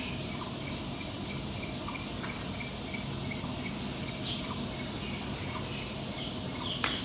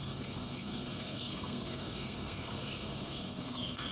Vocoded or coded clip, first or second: second